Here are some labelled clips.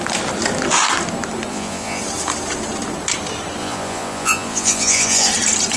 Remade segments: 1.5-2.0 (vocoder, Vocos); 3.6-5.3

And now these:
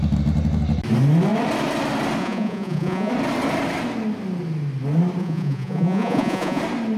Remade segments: 2.2-3.1 (vocoder, Vocos); 5.2-6.6

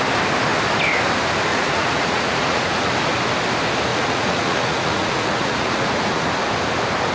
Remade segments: 1.5-2.9 (vocoder, Vocos); 3.9-6.3